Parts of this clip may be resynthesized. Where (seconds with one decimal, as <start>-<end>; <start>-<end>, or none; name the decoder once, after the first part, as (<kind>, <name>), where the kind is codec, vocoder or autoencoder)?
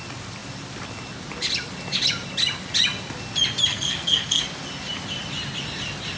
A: 3.7-4.4 (codec, SNAC)